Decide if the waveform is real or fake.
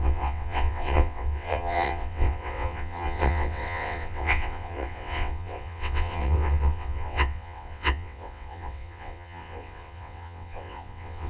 fake